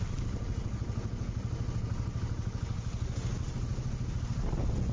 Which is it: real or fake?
real